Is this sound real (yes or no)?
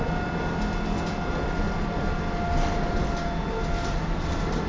yes